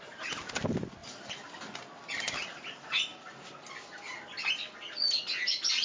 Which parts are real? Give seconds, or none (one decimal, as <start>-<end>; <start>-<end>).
0.0-5.8